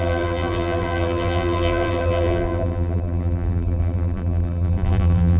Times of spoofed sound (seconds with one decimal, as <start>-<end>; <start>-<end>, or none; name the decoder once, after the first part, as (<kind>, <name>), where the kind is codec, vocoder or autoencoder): 0.0-5.4 (vocoder, BigVGAN v2)